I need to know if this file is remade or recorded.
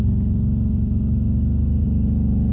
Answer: recorded